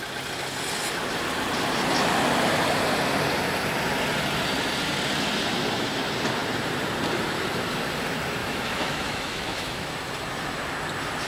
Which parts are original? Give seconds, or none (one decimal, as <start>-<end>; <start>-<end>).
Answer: 0.0-8.4; 9.9-11.3